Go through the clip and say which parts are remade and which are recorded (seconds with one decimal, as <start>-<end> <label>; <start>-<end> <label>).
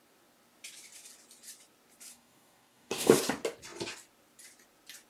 0.0-2.1 recorded; 2.1-3.2 remade; 3.2-5.1 recorded